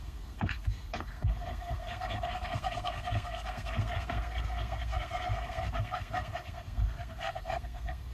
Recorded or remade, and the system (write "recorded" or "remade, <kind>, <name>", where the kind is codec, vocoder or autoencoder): remade, codec, SNAC